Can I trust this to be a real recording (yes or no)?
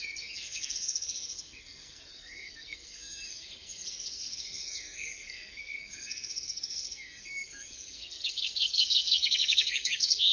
no